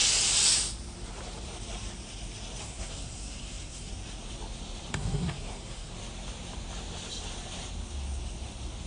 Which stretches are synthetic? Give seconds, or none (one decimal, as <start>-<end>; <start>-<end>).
2.6-3.9; 4.9-5.9